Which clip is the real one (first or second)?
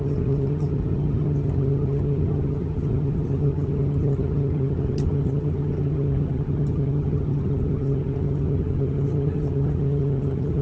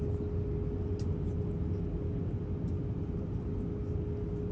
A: second